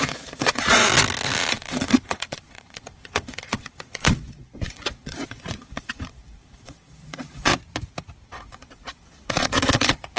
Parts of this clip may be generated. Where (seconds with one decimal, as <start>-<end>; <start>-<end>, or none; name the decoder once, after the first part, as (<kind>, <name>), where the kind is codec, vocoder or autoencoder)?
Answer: 0.0-0.8 (vocoder, Vocos); 1.5-7.5; 8.3-10.2